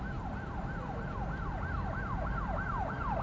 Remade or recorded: recorded